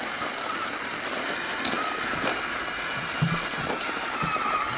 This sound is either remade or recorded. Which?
recorded